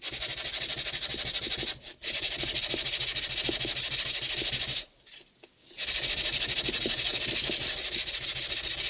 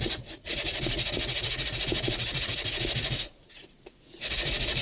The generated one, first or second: second